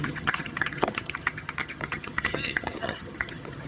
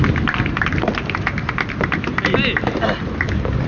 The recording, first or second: second